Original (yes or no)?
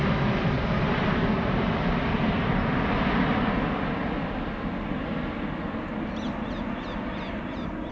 yes